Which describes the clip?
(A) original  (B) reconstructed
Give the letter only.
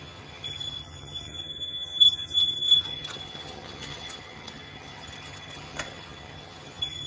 B